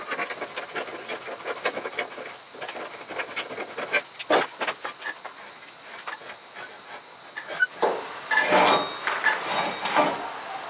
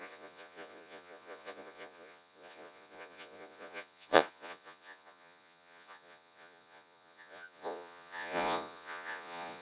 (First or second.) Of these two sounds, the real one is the first